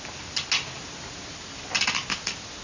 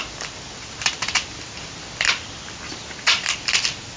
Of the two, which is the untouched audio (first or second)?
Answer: first